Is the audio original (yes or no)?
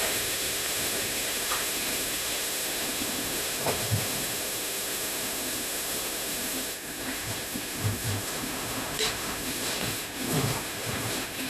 no